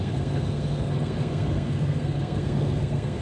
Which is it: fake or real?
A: fake